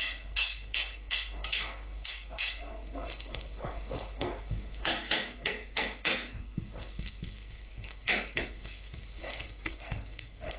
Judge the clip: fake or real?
fake